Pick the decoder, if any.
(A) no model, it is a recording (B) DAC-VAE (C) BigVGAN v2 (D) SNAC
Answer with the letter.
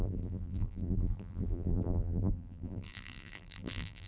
C